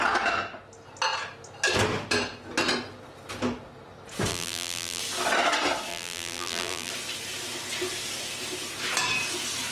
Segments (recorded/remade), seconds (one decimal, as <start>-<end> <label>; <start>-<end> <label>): 0.0-4.3 recorded; 4.3-5.0 remade; 5.0-5.9 recorded; 5.9-6.9 remade; 6.9-9.7 recorded